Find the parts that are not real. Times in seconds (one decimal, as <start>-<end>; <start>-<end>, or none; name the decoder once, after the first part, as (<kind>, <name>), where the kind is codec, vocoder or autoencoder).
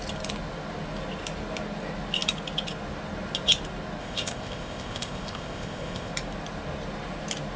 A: 4.0-6.1 (codec, ZipCodec)